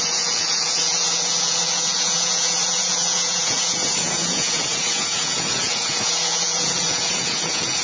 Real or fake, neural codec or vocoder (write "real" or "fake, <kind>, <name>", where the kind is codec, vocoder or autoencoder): fake, vocoder, Vocos